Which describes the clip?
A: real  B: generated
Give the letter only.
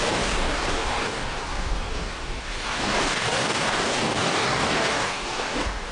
B